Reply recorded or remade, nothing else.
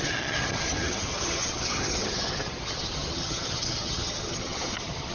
remade